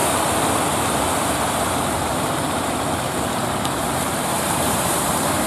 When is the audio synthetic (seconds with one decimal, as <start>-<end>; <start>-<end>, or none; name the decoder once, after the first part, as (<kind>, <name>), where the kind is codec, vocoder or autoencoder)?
3.3-5.5 (vocoder, BigVGAN v2)